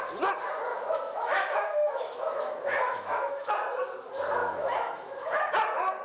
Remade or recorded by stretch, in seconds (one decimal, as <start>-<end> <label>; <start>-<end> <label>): 0.0-0.7 recorded; 0.7-3.5 remade; 3.5-4.4 recorded; 4.4-5.5 remade; 5.5-6.0 recorded